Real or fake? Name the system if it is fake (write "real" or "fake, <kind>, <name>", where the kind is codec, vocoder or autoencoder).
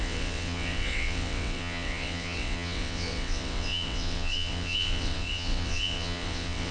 fake, vocoder, WaveNeXt